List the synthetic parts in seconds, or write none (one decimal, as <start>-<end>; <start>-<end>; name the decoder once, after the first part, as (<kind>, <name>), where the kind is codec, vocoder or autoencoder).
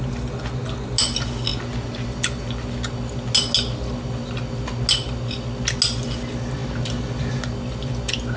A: none